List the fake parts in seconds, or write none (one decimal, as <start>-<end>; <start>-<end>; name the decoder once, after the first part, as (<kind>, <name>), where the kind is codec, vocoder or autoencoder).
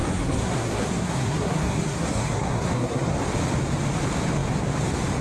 0.0-3.1 (codec, SNAC)